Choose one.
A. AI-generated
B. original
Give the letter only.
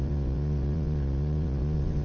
A